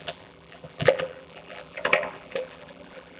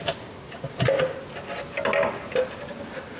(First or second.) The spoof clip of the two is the first